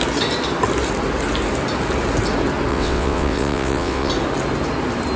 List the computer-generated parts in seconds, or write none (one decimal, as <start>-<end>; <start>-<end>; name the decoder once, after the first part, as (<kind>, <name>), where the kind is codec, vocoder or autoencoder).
2.7-4.1 (vocoder, WaveNeXt)